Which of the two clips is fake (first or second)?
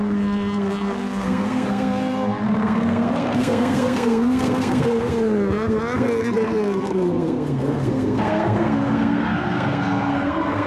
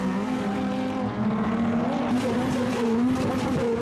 first